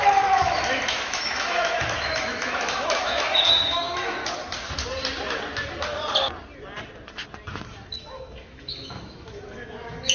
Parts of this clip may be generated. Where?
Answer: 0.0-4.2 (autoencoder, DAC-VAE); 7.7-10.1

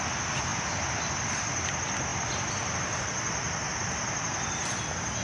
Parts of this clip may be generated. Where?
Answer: 0.5-1.0 (vocoder, BigVGAN v2); 2.1-3.0

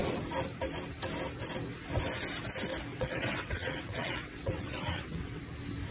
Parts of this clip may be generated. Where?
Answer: 2.9-5.4 (vocoder, WaveNeXt)

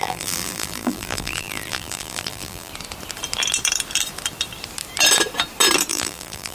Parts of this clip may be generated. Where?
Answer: 0.0-2.7 (vocoder, BigVGAN v2); 5.9-6.5

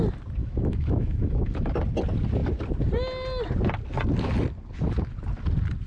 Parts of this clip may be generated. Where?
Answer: 0.4-1.7 (autoencoder, DAC-VAE)

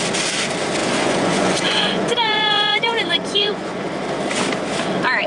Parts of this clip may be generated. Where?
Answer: 0.8-3.9 (vocoder, Vocos)

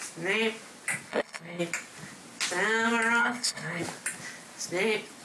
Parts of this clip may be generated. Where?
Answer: 1.1-1.6 (codec, HILCodec); 3.2-3.8

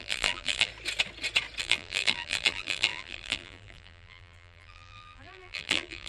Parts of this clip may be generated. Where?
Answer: 0.0-0.7 (vocoder, BigVGAN v2); 1.6-6.1